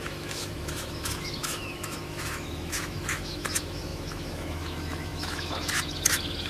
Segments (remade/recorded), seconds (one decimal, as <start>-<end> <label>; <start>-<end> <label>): 0.0-6.5 remade